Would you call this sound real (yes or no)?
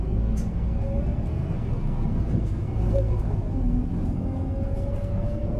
no